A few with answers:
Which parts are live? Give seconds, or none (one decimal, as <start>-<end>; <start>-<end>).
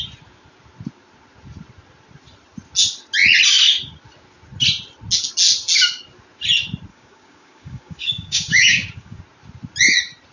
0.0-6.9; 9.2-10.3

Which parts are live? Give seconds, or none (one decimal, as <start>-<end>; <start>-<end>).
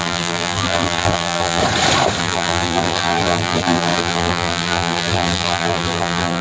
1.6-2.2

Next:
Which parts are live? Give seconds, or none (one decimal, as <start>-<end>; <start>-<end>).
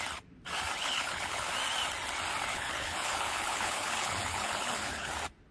0.0-0.8; 1.5-2.5; 5.1-5.5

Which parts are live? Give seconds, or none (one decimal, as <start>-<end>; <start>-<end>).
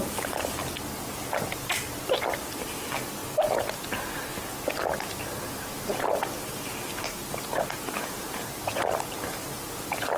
0.6-2.5; 3.2-5.2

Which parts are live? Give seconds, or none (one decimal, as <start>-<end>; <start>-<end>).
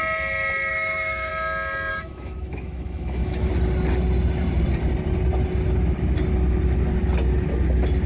0.0-0.7; 1.3-1.9; 3.5-8.1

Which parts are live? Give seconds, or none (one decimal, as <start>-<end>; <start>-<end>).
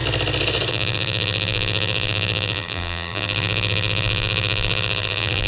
0.0-0.7